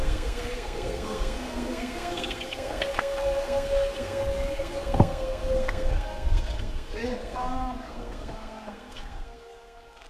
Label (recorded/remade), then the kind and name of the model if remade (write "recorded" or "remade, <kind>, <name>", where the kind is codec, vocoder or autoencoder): remade, codec, SNAC